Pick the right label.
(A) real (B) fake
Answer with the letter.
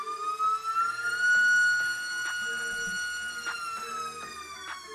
A